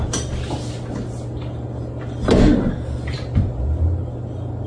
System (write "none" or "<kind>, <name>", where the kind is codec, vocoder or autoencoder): none